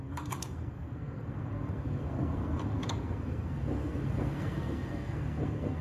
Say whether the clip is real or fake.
fake